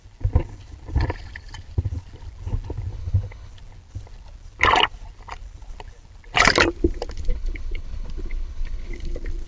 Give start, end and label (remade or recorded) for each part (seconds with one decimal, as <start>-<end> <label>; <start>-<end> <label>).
0.0-2.9 recorded; 2.9-3.5 remade; 3.5-7.3 recorded; 7.3-8.9 remade; 8.9-9.5 recorded